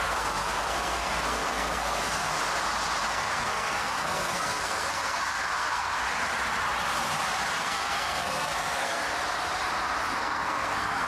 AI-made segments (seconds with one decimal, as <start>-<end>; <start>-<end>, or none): 0.0-2.3; 3.1-6.0; 7.6-9.0; 10.1-11.1